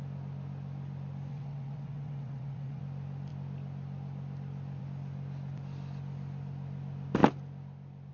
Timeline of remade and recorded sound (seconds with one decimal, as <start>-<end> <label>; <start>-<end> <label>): 0.0-1.3 recorded; 1.3-2.8 remade; 2.8-8.1 recorded